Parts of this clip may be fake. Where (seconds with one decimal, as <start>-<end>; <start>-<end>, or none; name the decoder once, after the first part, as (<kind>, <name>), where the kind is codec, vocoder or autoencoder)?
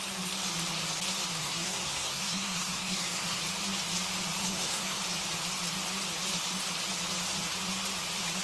1.4-3.4 (codec, SNAC); 4.4-5.0